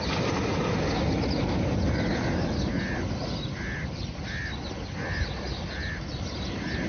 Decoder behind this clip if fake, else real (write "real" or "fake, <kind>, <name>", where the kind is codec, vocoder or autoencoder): real